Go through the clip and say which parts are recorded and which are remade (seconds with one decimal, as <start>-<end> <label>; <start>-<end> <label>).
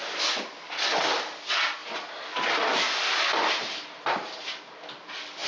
0.0-0.8 remade; 0.8-1.8 recorded; 1.8-2.3 remade; 2.3-5.5 recorded